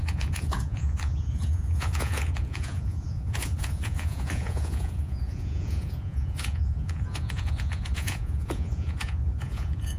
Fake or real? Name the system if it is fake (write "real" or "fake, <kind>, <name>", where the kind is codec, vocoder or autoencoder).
fake, vocoder, Vocos